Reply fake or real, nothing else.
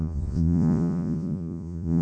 fake